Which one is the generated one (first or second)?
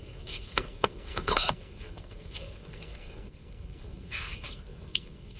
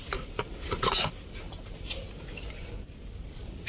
first